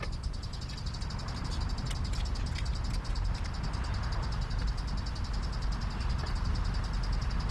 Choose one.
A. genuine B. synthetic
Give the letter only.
A